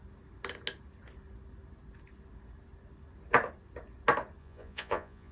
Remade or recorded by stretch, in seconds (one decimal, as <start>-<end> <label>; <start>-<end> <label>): 0.0-4.4 recorded; 4.4-5.3 remade